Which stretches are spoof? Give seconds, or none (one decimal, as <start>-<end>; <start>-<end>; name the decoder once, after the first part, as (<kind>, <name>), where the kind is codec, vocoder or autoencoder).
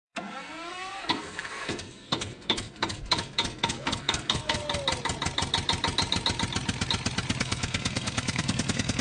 0.0-4.6 (codec, SNAC); 7.4-9.0